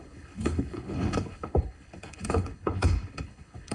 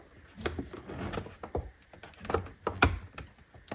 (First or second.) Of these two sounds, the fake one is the first